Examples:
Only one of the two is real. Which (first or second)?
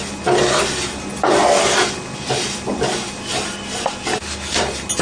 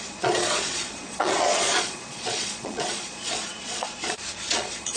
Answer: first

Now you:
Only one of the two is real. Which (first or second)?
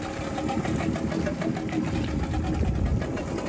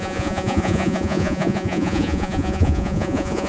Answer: first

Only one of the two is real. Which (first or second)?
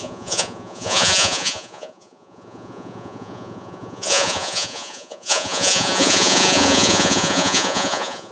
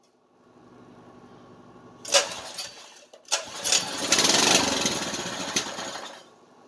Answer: second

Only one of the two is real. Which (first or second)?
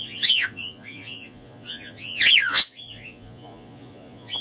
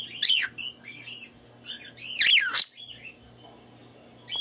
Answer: second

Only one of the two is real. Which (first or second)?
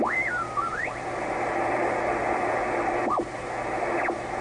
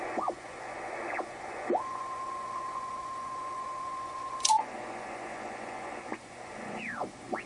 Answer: first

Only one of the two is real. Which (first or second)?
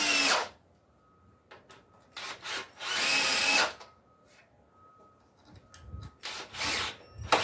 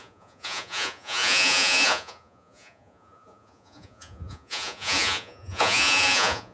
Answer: first